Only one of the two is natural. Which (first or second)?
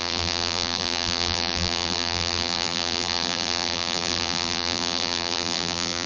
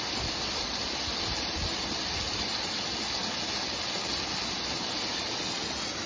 second